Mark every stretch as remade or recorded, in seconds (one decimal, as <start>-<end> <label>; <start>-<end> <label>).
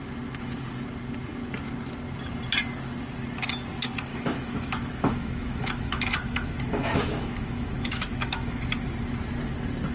0.0-4.1 recorded; 4.1-8.6 remade; 8.6-9.9 recorded